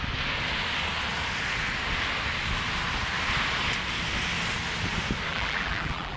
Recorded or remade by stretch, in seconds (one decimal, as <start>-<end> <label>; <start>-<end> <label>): 0.0-5.3 recorded; 5.3-6.2 remade